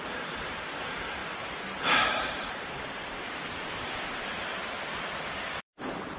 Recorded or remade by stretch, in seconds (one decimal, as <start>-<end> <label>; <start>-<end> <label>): 0.0-4.5 remade; 4.5-5.6 recorded; 5.6-6.2 remade